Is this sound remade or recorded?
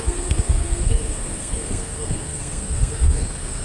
remade